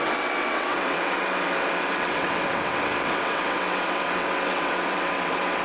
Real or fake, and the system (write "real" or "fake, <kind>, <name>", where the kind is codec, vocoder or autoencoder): fake, vocoder, WaveNeXt